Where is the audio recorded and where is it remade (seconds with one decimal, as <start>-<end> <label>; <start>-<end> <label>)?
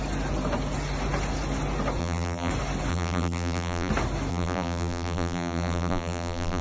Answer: 0.0-2.0 recorded; 2.0-2.5 remade; 2.5-2.9 recorded; 2.9-3.9 remade; 3.9-4.3 recorded; 4.3-6.6 remade